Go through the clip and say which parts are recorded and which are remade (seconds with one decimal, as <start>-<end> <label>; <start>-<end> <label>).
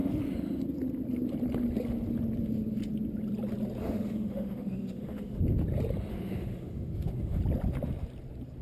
0.0-3.8 recorded; 3.8-5.4 remade; 5.4-6.1 recorded; 6.1-7.4 remade; 7.4-8.6 recorded